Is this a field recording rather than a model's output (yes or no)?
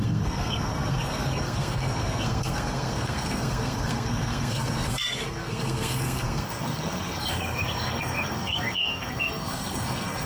no